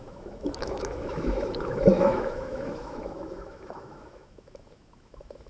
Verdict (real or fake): fake